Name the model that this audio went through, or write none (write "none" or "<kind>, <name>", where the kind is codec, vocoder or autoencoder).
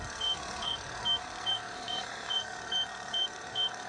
codec, SNAC